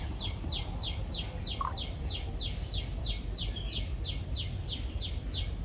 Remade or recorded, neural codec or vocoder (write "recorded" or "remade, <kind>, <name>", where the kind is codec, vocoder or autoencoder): recorded